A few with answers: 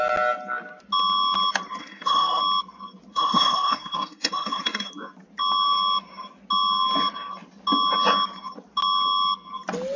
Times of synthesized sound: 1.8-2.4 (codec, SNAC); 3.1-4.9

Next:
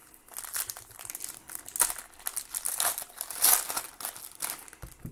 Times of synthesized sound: none

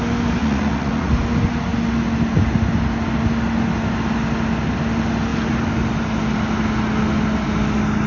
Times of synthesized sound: 0.4-1.1 (vocoder, Vocos)